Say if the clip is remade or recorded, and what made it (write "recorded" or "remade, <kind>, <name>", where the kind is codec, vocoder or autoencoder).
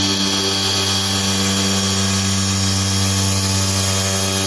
recorded